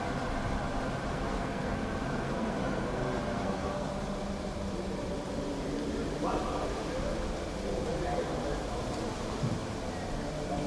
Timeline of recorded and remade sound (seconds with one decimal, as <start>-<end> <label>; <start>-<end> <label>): 0.0-1.1 recorded; 1.1-3.9 remade; 3.9-10.7 recorded